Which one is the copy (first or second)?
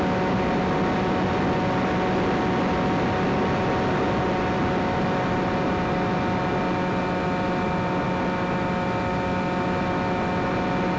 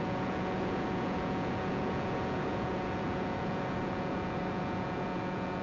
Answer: second